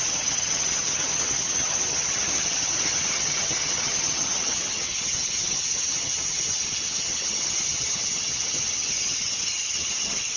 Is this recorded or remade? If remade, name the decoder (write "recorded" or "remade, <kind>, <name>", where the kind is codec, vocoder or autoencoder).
remade, vocoder, HiFi-GAN